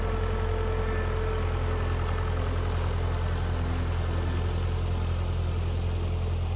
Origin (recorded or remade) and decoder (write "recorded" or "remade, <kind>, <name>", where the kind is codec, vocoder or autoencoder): recorded